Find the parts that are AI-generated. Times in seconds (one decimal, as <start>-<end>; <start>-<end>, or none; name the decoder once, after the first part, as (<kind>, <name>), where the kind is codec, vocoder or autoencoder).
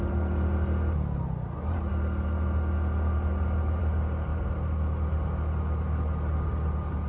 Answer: none